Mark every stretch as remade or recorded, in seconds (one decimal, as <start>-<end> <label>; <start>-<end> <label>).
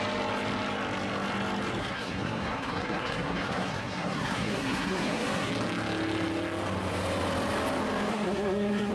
0.0-1.8 recorded; 1.8-5.5 remade; 5.5-8.1 recorded; 8.1-8.9 remade